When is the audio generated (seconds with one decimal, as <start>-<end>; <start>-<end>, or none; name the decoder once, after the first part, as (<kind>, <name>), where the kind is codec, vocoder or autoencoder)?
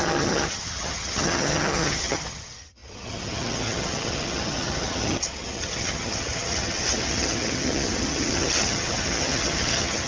0.0-10.1 (vocoder, HiFi-GAN)